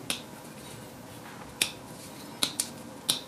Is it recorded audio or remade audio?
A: recorded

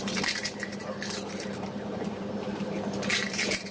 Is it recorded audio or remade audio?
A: remade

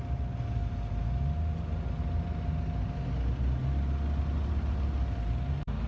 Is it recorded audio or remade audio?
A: recorded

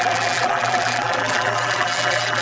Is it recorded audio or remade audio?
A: remade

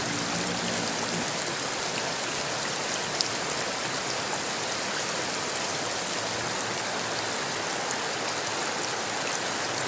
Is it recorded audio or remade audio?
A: recorded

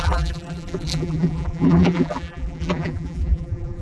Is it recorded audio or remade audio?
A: remade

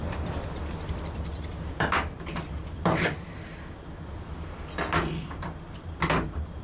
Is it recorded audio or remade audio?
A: remade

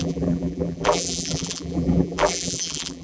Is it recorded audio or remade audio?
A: remade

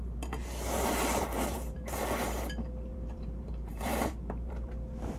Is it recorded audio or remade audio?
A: remade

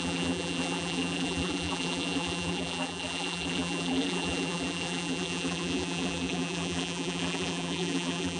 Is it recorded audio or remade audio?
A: remade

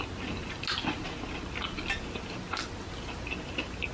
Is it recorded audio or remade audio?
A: recorded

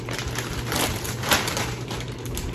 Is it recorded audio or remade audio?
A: remade